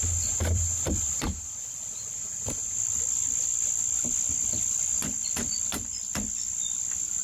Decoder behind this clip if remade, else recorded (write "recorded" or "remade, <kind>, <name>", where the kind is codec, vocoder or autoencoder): remade, vocoder, BigVGAN v2